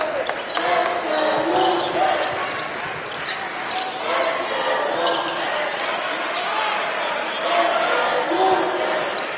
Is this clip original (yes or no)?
yes